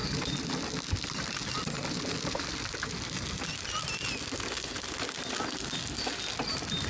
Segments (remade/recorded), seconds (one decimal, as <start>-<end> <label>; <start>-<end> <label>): 0.0-6.9 recorded